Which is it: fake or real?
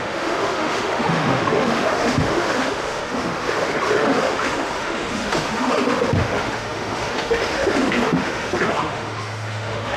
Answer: fake